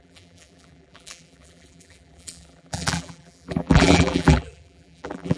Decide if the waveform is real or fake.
fake